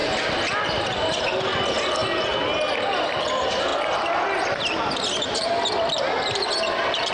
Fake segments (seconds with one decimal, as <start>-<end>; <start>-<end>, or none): none

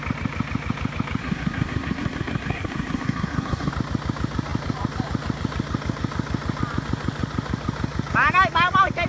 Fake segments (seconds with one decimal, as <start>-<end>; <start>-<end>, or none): 1.2-3.7

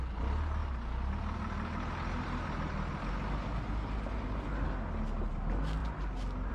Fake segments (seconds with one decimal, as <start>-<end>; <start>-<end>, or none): none

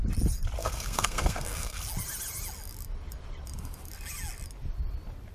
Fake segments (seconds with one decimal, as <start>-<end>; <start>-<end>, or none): 0.6-1.8

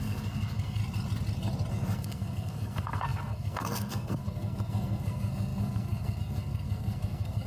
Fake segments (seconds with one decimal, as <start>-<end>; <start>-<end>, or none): 0.0-0.8; 1.7-7.5

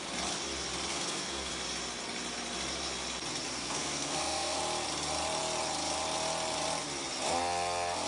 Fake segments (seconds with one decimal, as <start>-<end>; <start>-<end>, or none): 0.9-1.5; 3.5-4.6

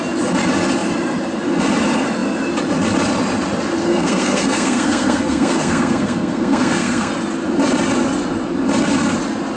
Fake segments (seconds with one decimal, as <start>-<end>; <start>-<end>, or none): 3.8-7.1

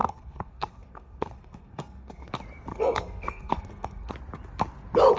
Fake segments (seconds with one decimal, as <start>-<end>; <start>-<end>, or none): 0.0-2.3; 2.7-4.1